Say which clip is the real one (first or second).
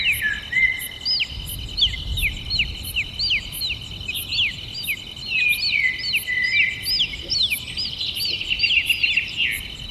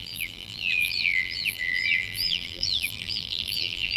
first